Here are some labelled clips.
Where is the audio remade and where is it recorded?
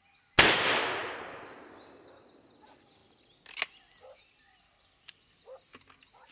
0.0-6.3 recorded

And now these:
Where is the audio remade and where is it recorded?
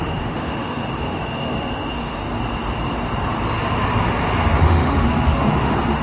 0.0-2.2 remade; 2.2-4.6 recorded; 4.6-6.0 remade